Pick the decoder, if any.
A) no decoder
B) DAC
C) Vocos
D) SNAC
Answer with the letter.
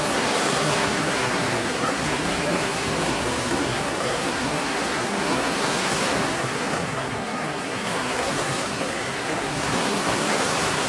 D